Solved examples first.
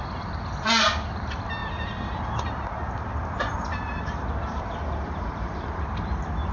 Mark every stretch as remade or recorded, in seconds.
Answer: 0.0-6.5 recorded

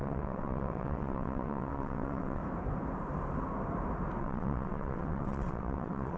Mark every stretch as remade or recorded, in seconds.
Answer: 0.0-2.4 remade; 2.4-4.2 recorded; 4.2-6.2 remade

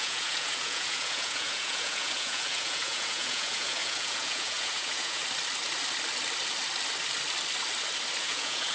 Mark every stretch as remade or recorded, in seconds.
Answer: 0.0-5.2 remade; 5.2-8.2 recorded; 8.2-8.7 remade